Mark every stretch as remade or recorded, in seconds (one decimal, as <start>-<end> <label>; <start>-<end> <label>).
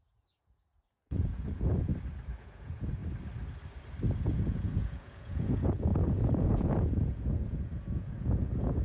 0.0-1.9 remade; 1.9-2.4 recorded; 2.4-3.0 remade; 3.0-4.2 recorded; 4.2-8.8 remade